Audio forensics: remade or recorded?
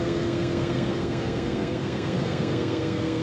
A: remade